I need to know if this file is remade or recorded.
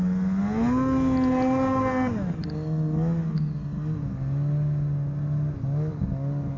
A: recorded